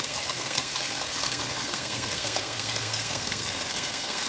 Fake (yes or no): yes